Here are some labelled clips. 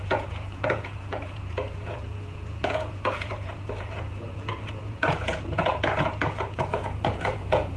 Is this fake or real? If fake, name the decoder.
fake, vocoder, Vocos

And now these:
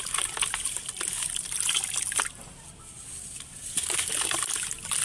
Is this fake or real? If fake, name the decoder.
real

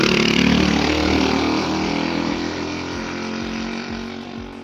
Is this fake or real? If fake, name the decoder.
real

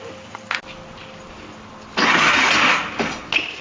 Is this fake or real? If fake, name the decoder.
real